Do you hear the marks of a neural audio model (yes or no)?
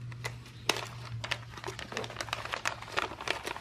no